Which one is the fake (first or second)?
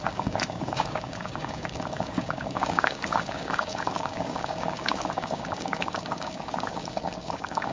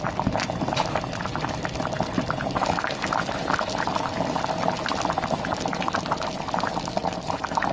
first